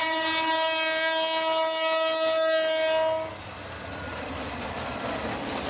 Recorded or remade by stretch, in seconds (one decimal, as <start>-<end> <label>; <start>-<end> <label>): 0.0-3.4 recorded; 3.4-5.7 remade